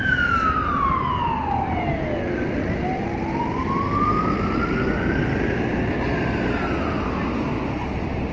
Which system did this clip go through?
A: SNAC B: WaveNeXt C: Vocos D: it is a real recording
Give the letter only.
D